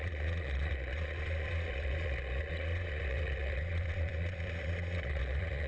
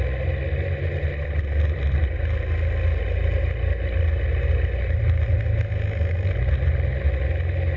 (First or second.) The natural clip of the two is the second